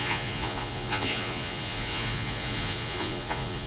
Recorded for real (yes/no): no